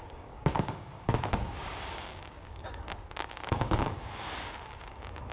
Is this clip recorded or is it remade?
remade